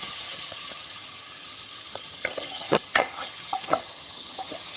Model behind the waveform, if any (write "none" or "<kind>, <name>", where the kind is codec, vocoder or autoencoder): vocoder, HiFi-GAN